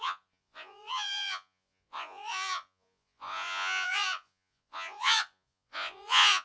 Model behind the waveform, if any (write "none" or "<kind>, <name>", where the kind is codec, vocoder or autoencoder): vocoder, Vocos